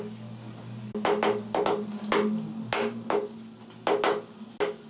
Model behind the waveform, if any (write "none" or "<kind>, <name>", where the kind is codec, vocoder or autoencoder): none